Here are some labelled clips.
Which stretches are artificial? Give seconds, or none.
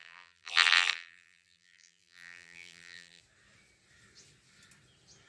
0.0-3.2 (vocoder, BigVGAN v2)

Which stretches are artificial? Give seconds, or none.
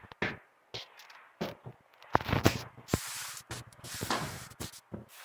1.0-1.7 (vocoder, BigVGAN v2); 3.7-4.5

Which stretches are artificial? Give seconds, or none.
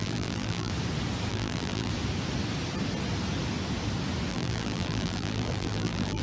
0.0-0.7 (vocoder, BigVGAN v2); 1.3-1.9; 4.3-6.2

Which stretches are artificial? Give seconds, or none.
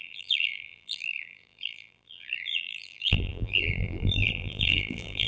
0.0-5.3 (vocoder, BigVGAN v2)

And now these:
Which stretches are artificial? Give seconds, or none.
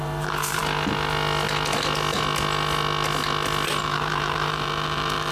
0.0-0.6 (vocoder, BigVGAN v2); 3.8-5.3